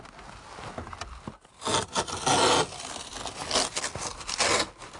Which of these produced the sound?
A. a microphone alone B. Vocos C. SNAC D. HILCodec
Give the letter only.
A